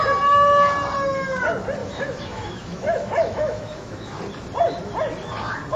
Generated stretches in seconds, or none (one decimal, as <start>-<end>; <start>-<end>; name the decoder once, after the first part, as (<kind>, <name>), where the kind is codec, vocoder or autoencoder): 1.8-4.2 (autoencoder, DAC-VAE)